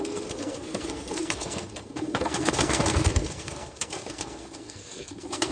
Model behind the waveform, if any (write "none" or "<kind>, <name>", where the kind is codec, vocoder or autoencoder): codec, SNAC